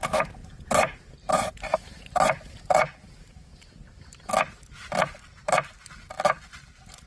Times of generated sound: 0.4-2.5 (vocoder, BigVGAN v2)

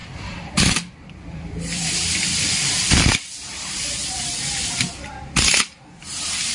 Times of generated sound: 0.0-1.9 (vocoder, BigVGAN v2); 2.6-4.5

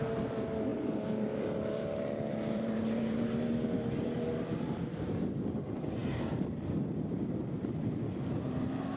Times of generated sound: 0.7-4.7 (vocoder, BigVGAN v2)

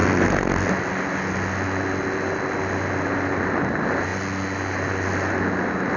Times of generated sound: none